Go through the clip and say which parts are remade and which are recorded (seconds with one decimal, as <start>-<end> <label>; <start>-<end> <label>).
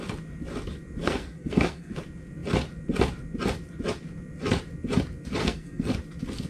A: 0.0-1.0 recorded; 1.0-2.0 remade; 2.0-5.4 recorded; 5.4-5.9 remade; 5.9-6.5 recorded